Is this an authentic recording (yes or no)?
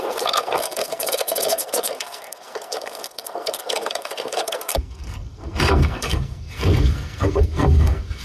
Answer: no